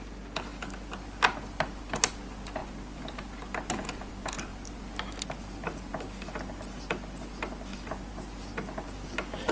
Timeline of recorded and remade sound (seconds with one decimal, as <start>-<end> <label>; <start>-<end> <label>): 0.0-9.5 recorded